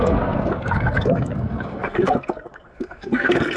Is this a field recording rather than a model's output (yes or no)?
no